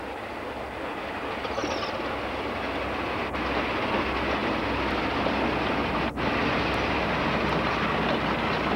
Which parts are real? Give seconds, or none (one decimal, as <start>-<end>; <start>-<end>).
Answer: 0.0-8.8